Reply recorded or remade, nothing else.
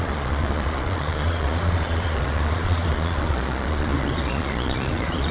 remade